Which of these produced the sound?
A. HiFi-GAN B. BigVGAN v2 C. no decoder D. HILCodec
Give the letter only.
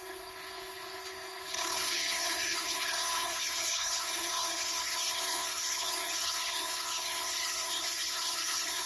D